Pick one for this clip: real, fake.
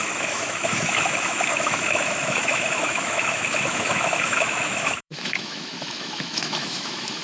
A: fake